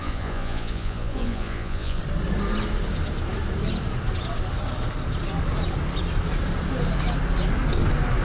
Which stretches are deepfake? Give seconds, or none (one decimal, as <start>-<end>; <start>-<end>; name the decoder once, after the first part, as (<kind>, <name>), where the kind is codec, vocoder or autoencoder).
0.0-2.0 (vocoder, Vocos)